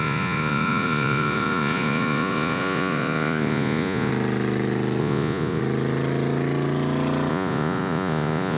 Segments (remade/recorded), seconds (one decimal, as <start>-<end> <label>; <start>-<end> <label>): 0.0-4.1 remade; 4.1-5.0 recorded; 5.0-5.6 remade; 5.6-7.3 recorded; 7.3-8.6 remade